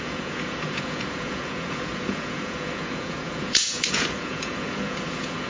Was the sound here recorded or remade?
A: remade